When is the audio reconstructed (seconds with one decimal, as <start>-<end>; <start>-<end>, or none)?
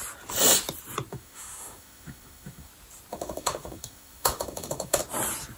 1.1-2.7; 3.1-5.0